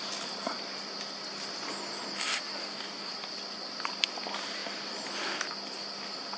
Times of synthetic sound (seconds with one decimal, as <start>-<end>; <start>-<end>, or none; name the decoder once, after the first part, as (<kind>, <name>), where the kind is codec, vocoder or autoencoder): 2.6-3.1 (codec, DAC)